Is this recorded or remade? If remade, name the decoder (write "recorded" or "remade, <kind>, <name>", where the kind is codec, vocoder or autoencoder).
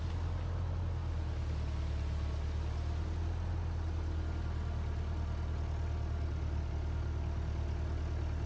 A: recorded